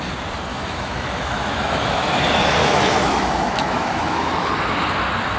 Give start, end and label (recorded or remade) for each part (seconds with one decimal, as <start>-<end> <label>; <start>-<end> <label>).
0.0-0.5 recorded; 0.5-2.2 remade; 2.2-2.6 recorded; 2.6-4.5 remade; 4.5-5.4 recorded